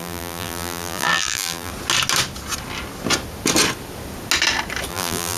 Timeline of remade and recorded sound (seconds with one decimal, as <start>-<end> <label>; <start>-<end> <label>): 0.0-1.7 remade; 1.7-4.9 recorded; 4.9-5.4 remade